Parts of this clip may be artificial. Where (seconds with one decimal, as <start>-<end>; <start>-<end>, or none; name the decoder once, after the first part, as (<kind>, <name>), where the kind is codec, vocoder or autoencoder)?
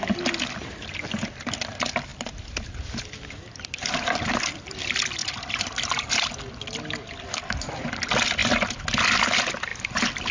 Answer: 2.1-4.7 (vocoder, BigVGAN v2); 5.2-6.5